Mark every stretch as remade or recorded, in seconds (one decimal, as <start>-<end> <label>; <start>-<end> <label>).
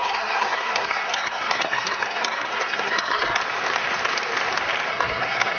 0.0-3.4 remade; 3.4-4.9 recorded; 4.9-5.6 remade